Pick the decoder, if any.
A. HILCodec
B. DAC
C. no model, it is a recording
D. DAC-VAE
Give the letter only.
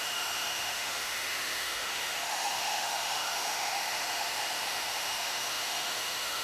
D